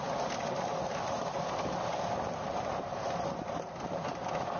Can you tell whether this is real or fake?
real